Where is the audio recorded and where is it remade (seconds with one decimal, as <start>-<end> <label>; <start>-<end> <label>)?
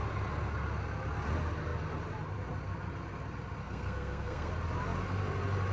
0.0-3.6 recorded; 3.6-4.5 remade; 4.5-5.7 recorded